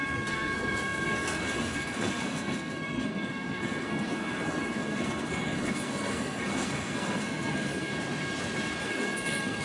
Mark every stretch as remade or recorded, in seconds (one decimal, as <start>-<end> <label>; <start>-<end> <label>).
0.0-7.9 remade; 7.9-8.8 recorded; 8.8-9.6 remade